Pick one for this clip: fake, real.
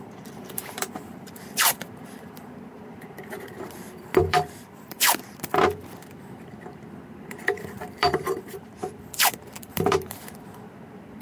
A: fake